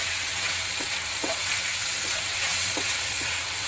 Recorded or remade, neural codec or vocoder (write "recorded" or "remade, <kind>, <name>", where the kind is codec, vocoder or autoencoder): remade, vocoder, WaveNeXt